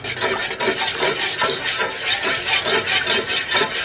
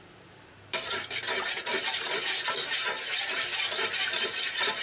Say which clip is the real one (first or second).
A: first